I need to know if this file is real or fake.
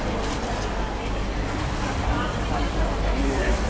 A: fake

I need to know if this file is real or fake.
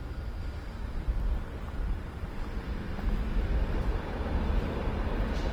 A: fake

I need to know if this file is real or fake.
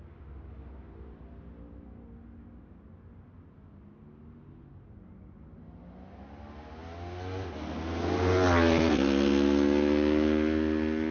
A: real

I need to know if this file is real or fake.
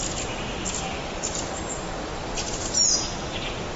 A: real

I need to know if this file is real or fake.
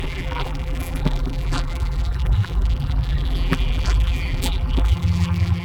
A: fake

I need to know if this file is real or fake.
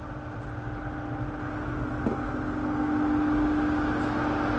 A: real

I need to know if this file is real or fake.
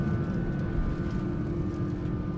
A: real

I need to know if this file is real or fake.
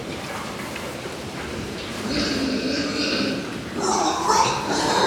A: fake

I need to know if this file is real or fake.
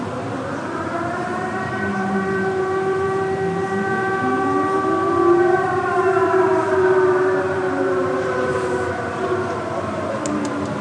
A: fake